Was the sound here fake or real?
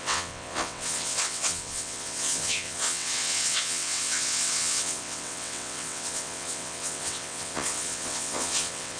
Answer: fake